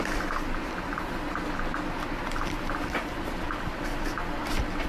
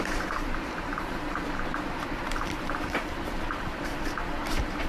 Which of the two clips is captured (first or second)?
first